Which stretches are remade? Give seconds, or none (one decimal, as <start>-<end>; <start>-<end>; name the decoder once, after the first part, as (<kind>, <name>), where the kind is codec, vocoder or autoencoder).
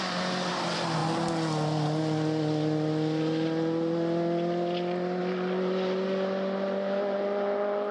none